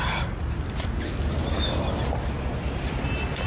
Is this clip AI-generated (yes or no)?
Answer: yes